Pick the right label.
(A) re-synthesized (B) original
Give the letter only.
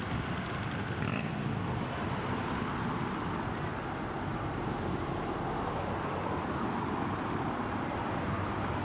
B